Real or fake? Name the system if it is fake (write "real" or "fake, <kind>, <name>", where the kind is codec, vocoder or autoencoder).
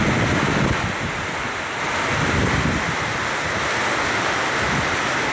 real